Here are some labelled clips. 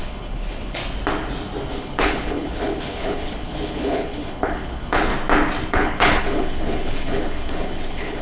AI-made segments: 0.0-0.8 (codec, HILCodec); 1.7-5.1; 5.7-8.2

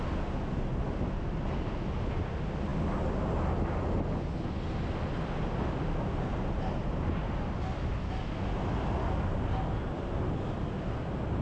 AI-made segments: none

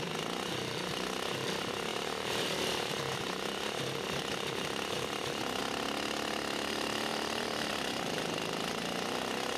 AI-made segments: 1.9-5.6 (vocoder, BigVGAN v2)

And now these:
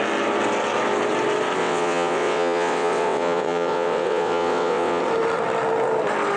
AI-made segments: 1.6-5.0 (vocoder, WaveNeXt)

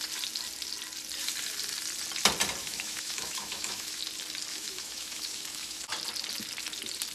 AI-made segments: 2.6-4.0 (autoencoder, DAC-VAE); 4.5-5.8

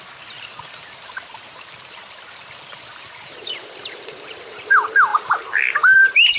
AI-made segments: 0.0-6.4 (vocoder, BigVGAN v2)